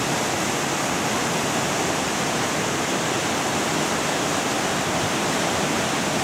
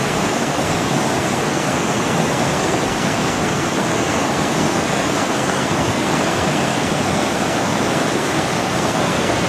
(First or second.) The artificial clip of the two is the second